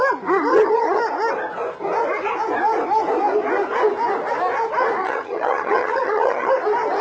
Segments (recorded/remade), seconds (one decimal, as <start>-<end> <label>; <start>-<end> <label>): 0.0-0.5 recorded; 0.5-1.0 remade; 1.0-5.0 recorded; 5.0-6.5 remade; 6.5-7.0 recorded